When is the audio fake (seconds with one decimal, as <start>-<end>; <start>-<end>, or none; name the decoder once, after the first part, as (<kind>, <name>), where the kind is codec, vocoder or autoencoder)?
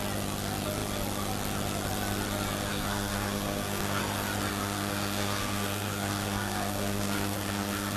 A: 2.7-4.0 (codec, SNAC); 4.5-8.0